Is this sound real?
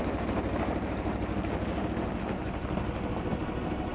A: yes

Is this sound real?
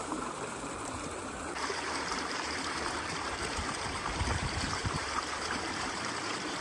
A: no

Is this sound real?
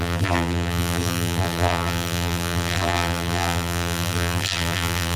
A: no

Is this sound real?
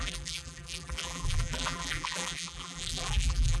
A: no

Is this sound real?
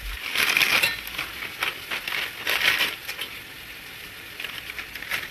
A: yes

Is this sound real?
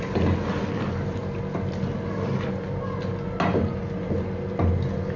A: yes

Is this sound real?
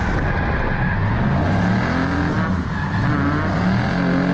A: yes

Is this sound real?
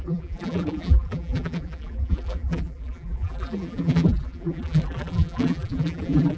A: no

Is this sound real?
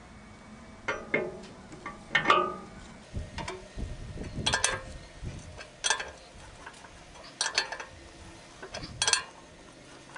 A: yes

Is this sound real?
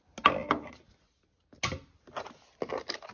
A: yes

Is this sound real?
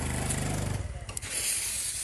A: yes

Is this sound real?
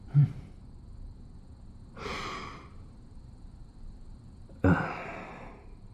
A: no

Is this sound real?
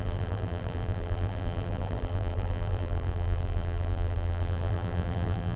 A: no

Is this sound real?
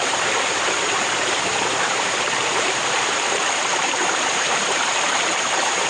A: no